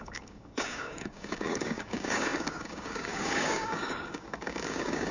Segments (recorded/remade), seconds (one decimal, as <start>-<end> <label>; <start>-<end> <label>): 0.0-5.1 remade